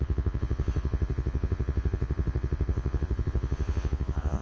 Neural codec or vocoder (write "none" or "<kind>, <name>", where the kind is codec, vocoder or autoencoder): vocoder, Vocos